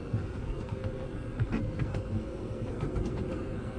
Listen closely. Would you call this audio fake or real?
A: fake